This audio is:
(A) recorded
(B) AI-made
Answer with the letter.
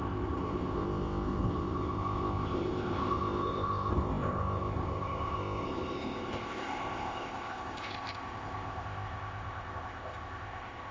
B